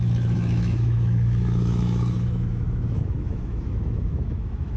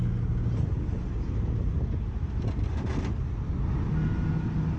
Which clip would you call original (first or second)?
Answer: second